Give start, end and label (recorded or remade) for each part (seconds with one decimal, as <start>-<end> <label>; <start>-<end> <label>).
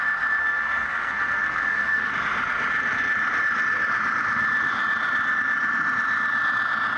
0.0-0.4 recorded; 0.4-2.1 remade; 2.1-7.0 recorded